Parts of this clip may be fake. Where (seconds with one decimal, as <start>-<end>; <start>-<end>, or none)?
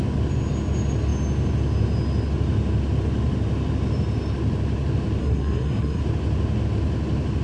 5.2-6.0